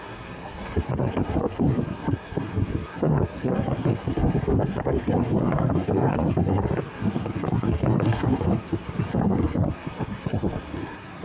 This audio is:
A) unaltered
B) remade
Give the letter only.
B